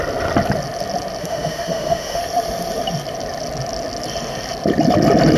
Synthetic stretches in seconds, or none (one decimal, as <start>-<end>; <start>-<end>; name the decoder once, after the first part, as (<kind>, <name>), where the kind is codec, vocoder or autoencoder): 1.2-2.2 (autoencoder, DAC-VAE)